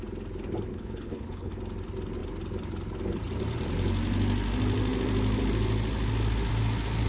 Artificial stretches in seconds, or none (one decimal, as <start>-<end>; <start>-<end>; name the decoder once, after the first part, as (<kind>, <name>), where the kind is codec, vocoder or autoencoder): 0.7-1.5 (codec, HILCodec)